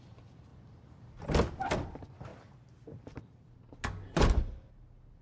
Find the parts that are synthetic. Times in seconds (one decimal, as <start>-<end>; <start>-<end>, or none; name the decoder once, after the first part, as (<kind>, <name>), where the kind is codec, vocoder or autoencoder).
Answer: none